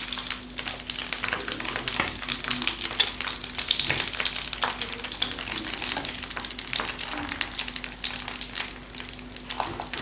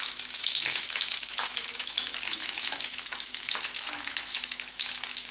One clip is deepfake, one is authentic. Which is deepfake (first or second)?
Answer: second